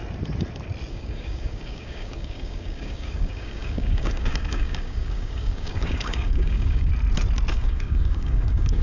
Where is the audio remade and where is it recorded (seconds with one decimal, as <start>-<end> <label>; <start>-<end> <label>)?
0.0-0.9 recorded; 0.9-6.9 remade; 6.9-7.5 recorded; 7.5-8.8 remade